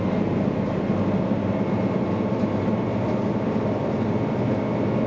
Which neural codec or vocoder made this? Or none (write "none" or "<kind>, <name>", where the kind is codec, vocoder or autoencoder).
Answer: none